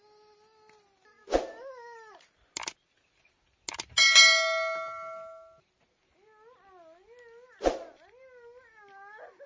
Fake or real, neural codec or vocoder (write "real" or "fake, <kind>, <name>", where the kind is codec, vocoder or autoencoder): real